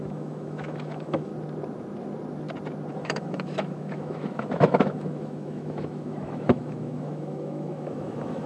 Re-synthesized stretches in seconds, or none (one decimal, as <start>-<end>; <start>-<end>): 0.0-1.3; 2.9-8.5